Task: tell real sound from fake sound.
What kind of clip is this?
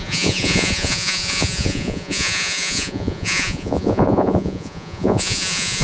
fake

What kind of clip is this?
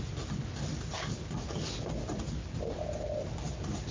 real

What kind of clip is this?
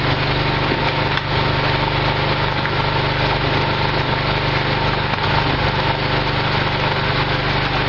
real